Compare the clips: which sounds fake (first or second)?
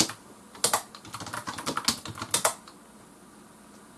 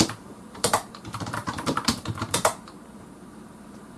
second